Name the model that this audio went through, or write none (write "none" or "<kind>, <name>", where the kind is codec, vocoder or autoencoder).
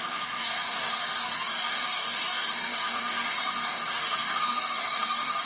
codec, DAC